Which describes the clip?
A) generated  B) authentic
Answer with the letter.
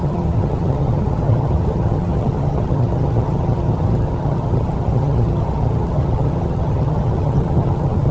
A